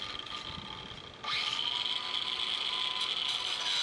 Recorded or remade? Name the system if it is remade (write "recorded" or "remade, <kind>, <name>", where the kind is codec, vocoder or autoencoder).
recorded